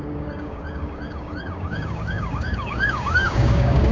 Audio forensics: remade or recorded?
remade